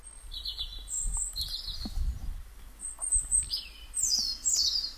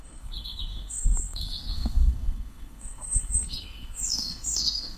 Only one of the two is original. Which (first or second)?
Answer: first